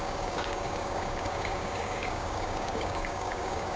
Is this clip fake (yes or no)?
yes